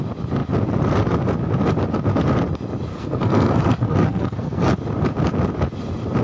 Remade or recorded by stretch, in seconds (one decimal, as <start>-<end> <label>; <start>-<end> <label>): 0.0-2.9 recorded; 2.9-4.7 remade; 4.7-6.2 recorded